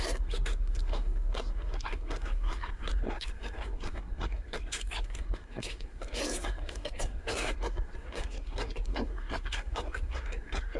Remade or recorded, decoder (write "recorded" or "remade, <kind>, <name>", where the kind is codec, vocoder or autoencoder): remade, codec, SNAC